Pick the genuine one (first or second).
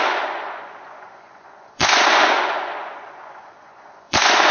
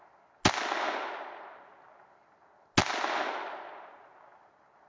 second